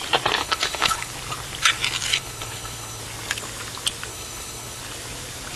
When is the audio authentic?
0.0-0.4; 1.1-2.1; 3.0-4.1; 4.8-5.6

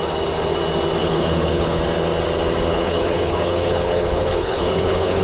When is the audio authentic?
0.0-1.0; 1.8-2.7

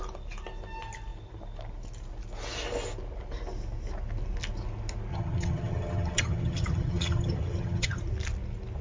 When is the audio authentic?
0.0-5.1; 8.0-8.8

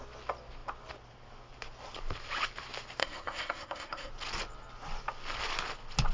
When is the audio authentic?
0.0-3.0; 4.1-6.1

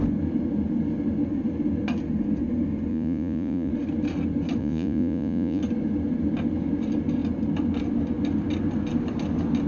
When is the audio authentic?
0.0-2.9; 3.7-4.6; 5.6-9.7